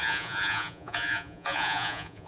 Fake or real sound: fake